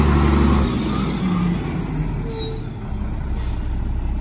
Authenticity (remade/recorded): recorded